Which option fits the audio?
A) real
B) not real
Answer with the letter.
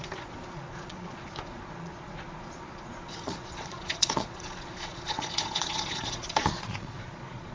B